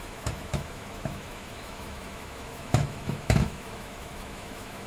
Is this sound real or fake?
fake